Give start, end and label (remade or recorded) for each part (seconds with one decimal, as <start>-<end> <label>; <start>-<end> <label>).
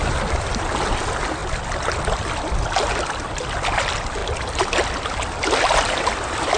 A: 0.0-6.6 recorded